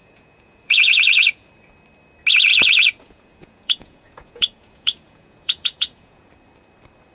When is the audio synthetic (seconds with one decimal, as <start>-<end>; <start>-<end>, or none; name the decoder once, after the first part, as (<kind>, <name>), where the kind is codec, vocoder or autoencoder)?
0.0-1.5 (vocoder, Vocos); 2.5-6.3